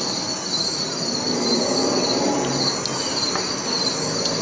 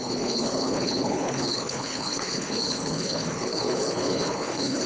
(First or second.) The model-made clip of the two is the second